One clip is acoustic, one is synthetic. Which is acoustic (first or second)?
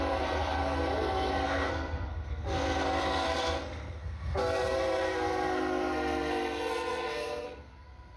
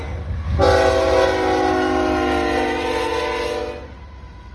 second